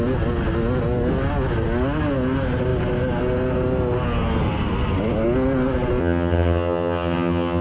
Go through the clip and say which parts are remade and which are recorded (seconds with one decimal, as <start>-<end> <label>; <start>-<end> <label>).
0.0-6.0 recorded; 6.0-7.6 remade